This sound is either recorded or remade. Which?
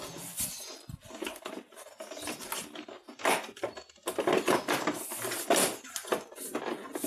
recorded